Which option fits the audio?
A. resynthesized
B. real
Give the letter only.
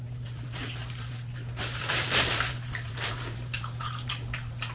B